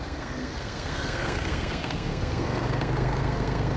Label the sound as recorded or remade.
remade